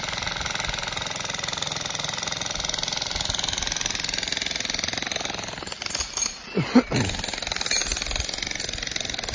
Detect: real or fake real